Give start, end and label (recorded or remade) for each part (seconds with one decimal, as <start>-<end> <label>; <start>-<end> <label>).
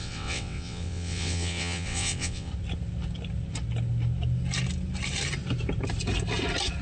0.0-2.5 remade; 2.5-6.8 recorded